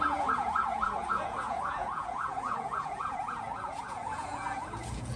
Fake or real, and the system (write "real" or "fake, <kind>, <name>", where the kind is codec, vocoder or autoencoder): fake, vocoder, Vocos